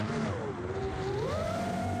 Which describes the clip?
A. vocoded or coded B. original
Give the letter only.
B